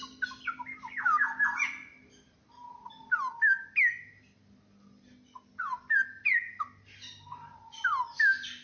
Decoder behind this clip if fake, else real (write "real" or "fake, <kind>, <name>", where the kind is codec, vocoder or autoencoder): real